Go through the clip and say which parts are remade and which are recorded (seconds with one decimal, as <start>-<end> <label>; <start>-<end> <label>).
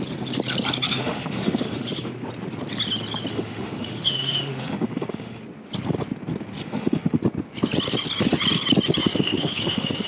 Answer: 0.0-0.9 recorded; 0.9-2.1 remade; 2.1-3.3 recorded; 3.3-5.4 remade; 5.4-6.6 recorded; 6.6-7.2 remade; 7.2-9.0 recorded; 9.0-10.1 remade